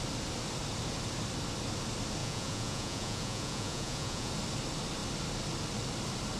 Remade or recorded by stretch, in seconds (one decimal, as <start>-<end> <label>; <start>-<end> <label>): 0.0-2.2 recorded; 2.2-4.3 remade; 4.3-6.4 recorded